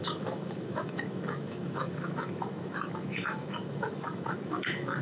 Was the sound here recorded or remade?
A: remade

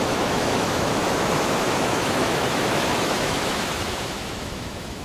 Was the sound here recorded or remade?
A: remade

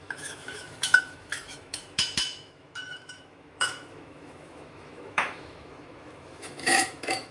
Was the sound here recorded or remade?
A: remade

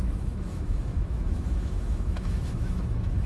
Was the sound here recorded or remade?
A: remade